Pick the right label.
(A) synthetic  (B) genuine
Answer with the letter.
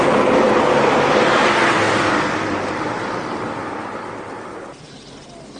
A